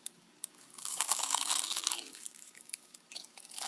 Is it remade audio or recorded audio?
remade